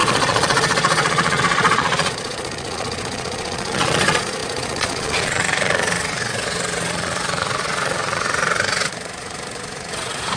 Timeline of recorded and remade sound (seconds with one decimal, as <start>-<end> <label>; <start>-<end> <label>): 0.0-10.4 remade